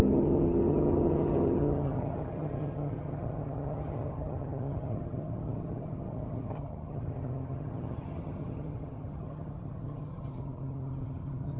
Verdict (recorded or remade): remade